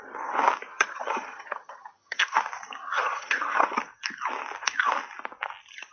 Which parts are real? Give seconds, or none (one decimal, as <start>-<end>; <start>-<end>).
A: 0.0-0.7; 2.2-2.8; 3.8-5.9